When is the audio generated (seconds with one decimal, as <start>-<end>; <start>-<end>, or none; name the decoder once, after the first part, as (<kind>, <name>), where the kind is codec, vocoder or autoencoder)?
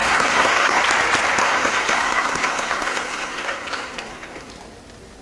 0.0-0.8 (codec, SNAC); 1.4-4.5